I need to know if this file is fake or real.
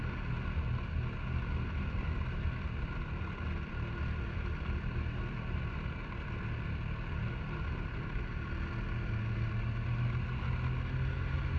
real